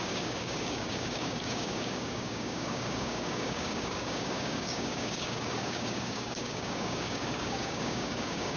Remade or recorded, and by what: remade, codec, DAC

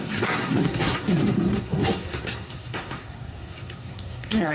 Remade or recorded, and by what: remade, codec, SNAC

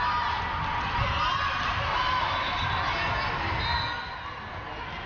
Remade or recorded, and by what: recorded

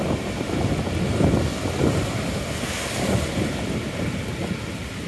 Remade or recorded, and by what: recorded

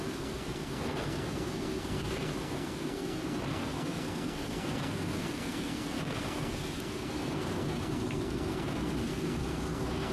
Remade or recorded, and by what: remade, codec, SNAC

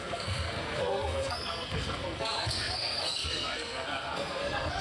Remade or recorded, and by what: remade, codec, SNAC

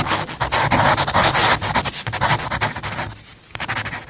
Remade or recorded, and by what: recorded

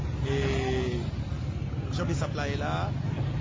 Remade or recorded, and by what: recorded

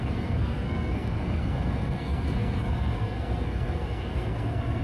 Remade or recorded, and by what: remade, codec, SNAC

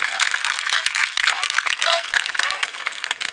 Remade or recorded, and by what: remade, codec, SNAC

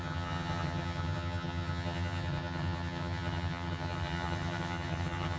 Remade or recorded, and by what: remade, vocoder, HiFi-GAN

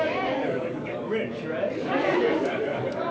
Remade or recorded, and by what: remade, codec, DAC